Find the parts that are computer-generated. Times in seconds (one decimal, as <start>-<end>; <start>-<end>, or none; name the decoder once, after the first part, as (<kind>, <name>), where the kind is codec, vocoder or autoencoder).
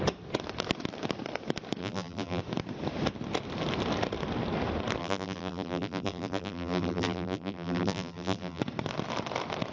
1.8-2.4 (vocoder, BigVGAN v2); 5.0-8.6